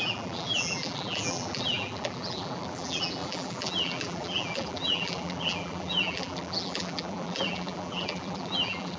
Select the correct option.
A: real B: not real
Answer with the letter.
B